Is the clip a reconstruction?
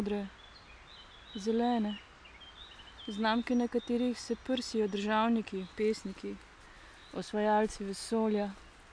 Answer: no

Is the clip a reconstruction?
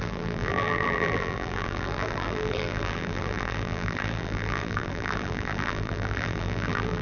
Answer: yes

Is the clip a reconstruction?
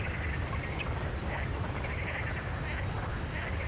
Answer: no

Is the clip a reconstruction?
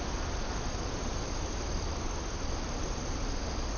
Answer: no